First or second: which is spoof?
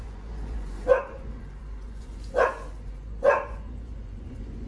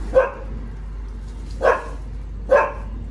first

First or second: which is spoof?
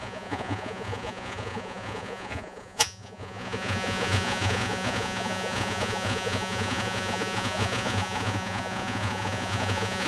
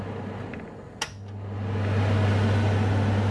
first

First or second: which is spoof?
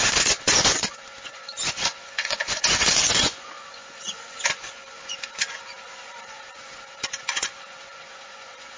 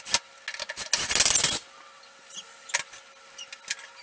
first